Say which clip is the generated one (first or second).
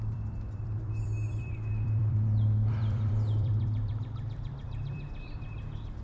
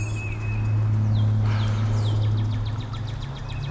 first